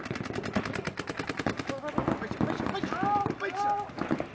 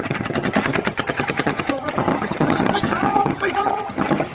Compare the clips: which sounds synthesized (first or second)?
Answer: second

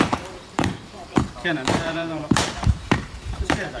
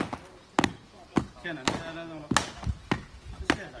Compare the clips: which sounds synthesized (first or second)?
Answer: first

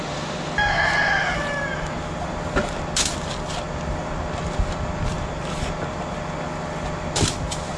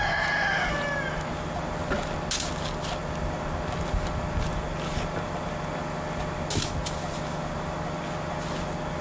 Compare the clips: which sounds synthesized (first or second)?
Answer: first